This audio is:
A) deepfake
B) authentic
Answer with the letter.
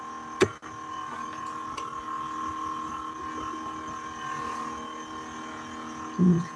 B